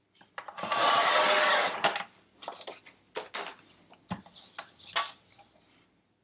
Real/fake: real